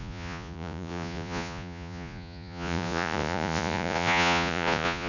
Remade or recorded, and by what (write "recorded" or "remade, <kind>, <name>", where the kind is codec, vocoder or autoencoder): remade, vocoder, Vocos